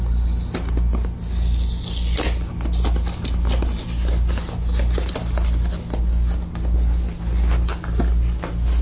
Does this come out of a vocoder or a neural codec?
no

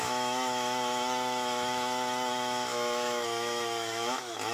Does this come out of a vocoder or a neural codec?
yes